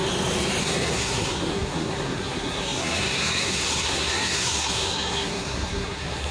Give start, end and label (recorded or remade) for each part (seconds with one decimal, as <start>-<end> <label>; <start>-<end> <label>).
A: 0.0-0.6 recorded; 0.6-6.3 remade